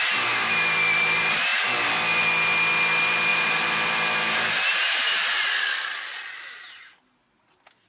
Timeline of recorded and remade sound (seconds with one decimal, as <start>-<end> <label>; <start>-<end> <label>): 0.0-3.3 recorded; 3.3-5.3 remade; 5.3-7.9 recorded